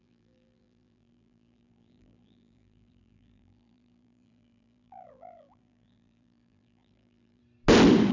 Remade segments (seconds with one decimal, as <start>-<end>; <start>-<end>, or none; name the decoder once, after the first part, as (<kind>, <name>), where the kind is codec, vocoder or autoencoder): 0.0-7.4 (vocoder, BigVGAN v2)